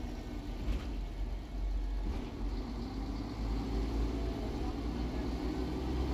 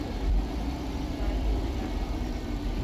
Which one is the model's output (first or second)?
second